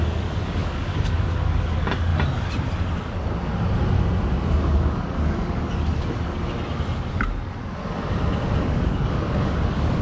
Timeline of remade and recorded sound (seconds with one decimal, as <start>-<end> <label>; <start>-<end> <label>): 0.0-2.1 remade; 2.1-4.6 recorded; 4.6-5.9 remade; 5.9-8.6 recorded; 8.6-10.0 remade